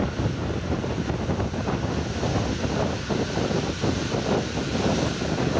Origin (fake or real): real